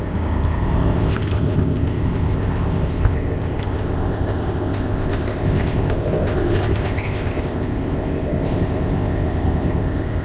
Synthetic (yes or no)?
yes